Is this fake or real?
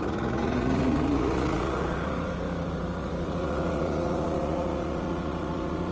fake